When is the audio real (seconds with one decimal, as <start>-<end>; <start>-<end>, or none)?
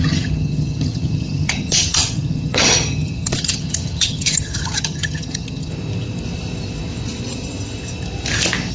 5.7-8.7